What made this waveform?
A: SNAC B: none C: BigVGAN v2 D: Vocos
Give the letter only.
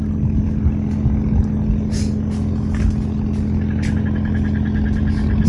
B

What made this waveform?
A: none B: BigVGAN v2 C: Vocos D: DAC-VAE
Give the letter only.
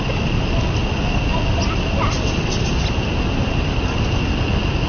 A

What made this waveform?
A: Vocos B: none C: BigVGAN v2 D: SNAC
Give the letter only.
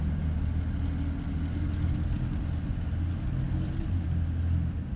B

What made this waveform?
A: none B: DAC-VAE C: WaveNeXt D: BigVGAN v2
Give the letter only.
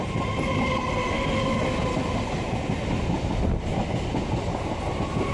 A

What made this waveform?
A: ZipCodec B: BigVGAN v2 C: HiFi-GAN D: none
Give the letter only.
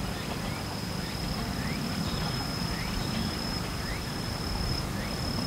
B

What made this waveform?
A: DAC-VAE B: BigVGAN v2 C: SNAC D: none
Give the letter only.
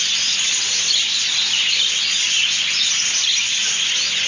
D